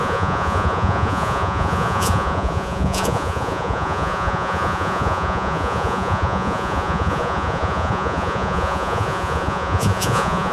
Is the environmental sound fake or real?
fake